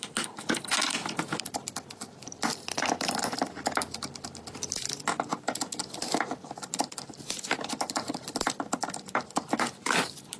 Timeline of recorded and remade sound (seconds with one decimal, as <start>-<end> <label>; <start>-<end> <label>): 0.0-10.4 remade